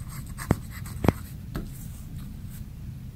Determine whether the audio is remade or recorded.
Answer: recorded